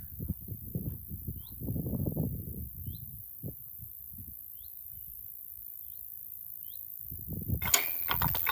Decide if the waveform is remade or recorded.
recorded